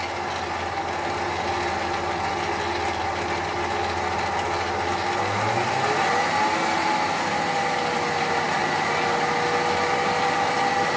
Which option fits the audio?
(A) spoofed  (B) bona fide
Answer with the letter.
B